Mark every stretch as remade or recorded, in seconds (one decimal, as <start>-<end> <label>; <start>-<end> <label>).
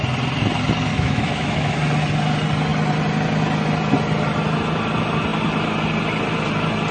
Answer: 0.0-0.9 recorded; 0.9-1.8 remade; 1.8-6.9 recorded